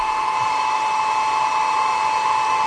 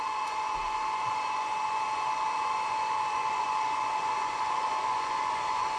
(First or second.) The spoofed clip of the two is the second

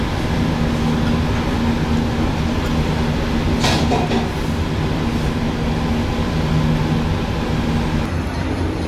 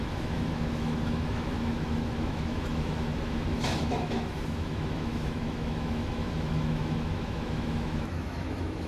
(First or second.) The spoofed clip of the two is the second